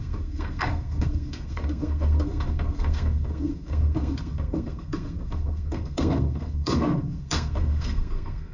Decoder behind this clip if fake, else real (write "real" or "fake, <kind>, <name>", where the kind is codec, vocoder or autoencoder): fake, codec, SNAC